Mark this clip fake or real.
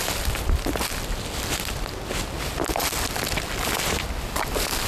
real